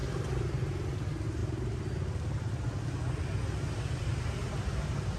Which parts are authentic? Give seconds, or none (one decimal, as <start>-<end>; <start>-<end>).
0.7-5.2